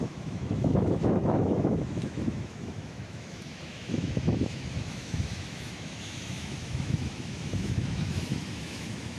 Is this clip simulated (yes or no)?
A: yes